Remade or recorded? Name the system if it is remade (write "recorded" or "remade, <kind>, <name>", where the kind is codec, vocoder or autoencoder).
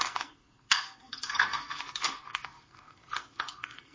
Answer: remade, codec, SNAC